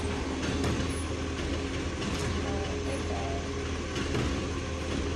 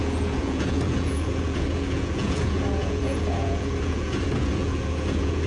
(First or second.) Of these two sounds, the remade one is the second